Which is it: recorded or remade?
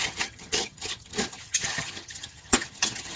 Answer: remade